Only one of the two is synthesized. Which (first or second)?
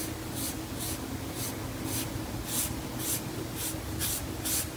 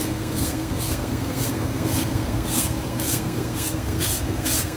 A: second